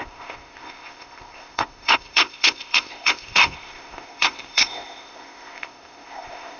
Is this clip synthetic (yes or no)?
yes